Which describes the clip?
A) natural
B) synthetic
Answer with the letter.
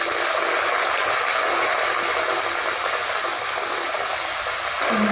A